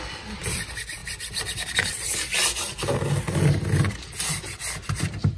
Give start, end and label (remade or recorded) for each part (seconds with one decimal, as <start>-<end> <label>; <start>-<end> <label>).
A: 0.0-5.4 recorded

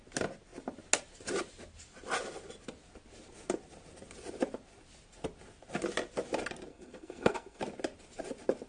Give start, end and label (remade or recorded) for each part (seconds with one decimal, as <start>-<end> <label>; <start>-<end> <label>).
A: 0.0-6.7 recorded; 6.7-7.6 remade; 7.6-8.7 recorded

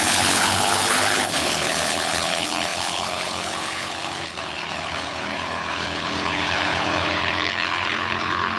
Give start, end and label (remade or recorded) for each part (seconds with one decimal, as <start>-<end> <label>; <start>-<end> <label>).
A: 0.0-8.6 remade

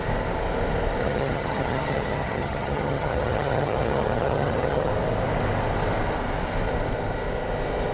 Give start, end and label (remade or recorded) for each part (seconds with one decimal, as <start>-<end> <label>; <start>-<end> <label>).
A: 0.0-1.0 recorded; 1.0-4.9 remade; 4.9-7.9 recorded

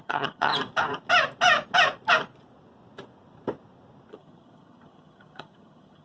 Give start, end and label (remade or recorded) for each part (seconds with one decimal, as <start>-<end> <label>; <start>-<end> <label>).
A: 0.0-0.5 remade; 0.5-4.1 recorded; 4.1-6.0 remade

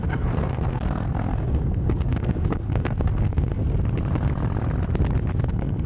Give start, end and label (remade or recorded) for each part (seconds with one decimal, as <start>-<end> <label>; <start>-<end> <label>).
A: 0.0-3.6 remade; 3.6-5.4 recorded; 5.4-5.9 remade

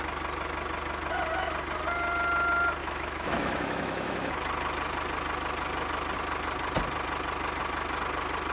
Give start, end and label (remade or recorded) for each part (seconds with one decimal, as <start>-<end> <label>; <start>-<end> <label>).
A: 0.0-2.8 recorded; 2.8-4.3 remade; 4.3-8.5 recorded